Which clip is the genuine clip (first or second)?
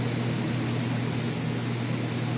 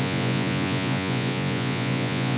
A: first